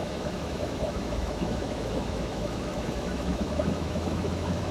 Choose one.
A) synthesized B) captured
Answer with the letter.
A